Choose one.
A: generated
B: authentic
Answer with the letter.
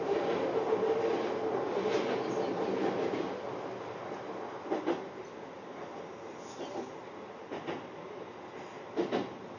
B